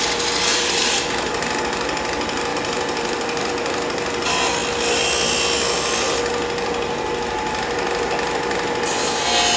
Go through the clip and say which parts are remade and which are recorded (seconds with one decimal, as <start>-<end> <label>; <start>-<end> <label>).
0.0-0.5 recorded; 0.5-1.6 remade; 1.6-2.5 recorded; 2.5-3.5 remade; 3.5-9.6 recorded